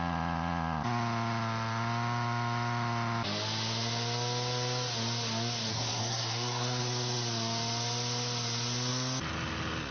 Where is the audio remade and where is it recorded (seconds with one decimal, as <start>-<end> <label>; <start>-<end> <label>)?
0.0-5.7 recorded; 5.7-6.8 remade; 6.8-9.9 recorded

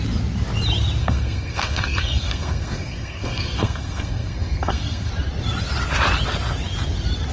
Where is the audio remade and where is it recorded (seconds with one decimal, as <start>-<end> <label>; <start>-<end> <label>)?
0.0-1.0 recorded; 1.0-5.1 remade; 5.1-7.3 recorded

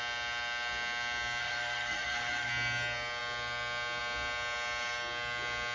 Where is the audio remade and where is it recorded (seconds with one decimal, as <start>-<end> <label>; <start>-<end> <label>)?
0.0-1.4 recorded; 1.4-2.5 remade; 2.5-5.7 recorded

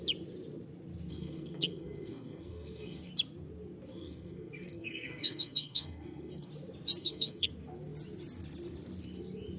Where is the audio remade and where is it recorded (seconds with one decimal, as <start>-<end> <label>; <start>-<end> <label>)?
0.0-1.1 recorded; 1.1-3.1 remade; 3.1-3.9 recorded; 3.9-6.5 remade; 6.5-7.0 recorded; 7.0-7.5 remade; 7.5-9.6 recorded

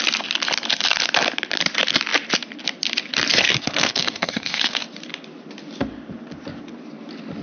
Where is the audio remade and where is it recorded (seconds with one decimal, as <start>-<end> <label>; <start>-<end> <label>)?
0.0-3.3 recorded; 3.3-4.8 remade; 4.8-7.4 recorded

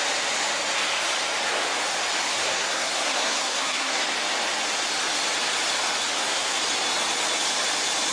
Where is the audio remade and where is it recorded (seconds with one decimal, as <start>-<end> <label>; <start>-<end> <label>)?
0.0-2.3 recorded; 2.3-4.0 remade; 4.0-6.1 recorded; 6.1-6.6 remade; 6.6-8.1 recorded

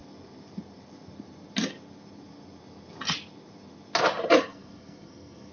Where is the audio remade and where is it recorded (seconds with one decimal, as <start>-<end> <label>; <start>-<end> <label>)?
0.0-4.5 recorded; 4.5-5.5 remade

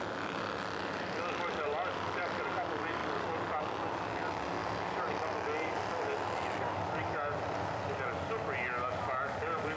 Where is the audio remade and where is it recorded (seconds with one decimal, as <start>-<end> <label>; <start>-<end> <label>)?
0.0-9.8 recorded